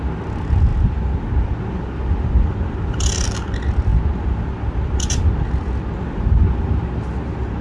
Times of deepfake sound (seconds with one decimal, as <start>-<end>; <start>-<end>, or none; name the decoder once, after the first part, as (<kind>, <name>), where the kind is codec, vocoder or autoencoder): none